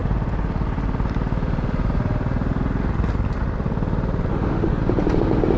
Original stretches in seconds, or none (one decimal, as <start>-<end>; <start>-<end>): 0.0-4.3; 4.8-5.6